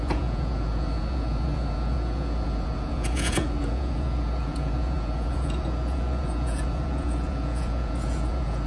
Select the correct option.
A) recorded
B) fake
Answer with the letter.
B